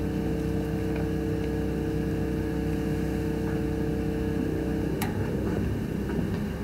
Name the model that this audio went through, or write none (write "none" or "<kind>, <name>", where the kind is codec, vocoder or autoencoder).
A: none